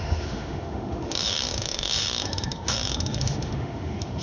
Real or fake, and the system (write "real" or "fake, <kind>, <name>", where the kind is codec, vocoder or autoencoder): fake, autoencoder, DAC-VAE